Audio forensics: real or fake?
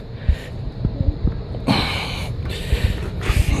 fake